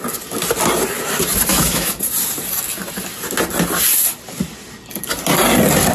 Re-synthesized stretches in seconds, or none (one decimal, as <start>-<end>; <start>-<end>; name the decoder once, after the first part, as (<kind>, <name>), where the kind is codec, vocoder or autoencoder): 1.5-2.0 (autoencoder, DAC-VAE)